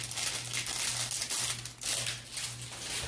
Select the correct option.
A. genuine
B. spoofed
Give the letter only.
A